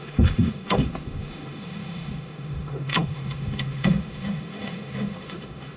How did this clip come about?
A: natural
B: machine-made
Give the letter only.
B